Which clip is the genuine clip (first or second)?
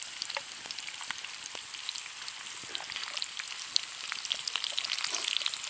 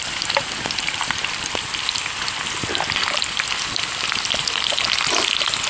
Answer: first